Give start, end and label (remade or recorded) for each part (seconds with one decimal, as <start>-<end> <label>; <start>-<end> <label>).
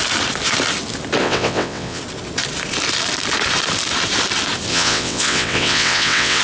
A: 0.0-1.2 recorded; 1.2-2.0 remade; 2.0-4.7 recorded; 4.7-6.4 remade